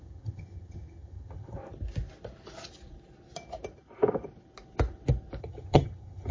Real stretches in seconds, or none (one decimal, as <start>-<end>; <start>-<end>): 1.6-5.4

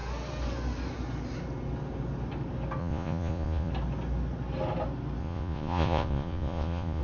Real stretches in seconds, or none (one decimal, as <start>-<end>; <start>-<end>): 0.0-2.8; 3.7-5.2